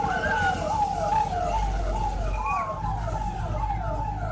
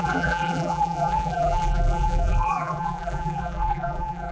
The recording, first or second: first